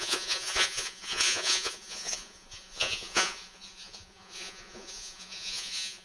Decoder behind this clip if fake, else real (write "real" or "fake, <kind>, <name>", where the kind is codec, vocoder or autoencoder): fake, vocoder, Vocos